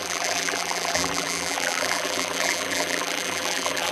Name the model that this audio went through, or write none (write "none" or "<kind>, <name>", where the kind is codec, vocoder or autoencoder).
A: vocoder, BigVGAN v2